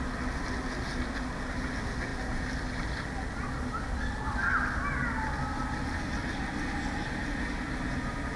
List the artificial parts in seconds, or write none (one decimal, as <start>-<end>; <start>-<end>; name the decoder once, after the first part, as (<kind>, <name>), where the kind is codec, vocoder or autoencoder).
none